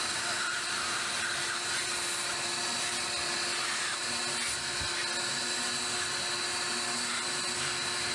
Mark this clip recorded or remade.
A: recorded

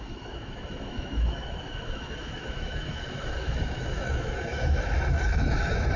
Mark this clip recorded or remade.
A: remade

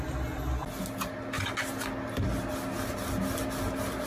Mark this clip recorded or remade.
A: recorded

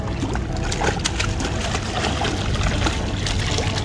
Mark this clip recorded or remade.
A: recorded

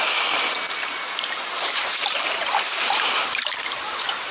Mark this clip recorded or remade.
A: recorded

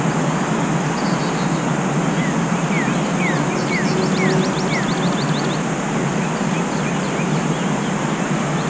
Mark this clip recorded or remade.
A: recorded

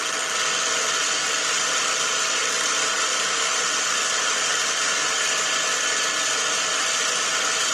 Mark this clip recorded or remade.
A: recorded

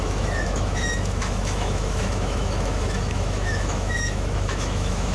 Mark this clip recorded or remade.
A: remade